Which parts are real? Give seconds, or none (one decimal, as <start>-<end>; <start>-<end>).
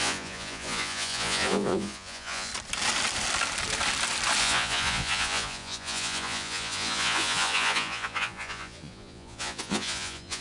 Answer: 2.5-4.4